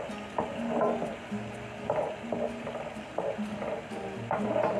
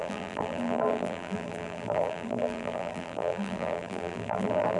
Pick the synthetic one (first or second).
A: second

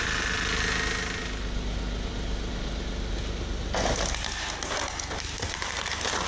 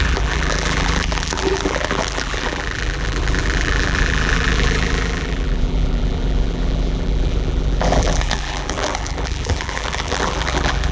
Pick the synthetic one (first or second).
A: second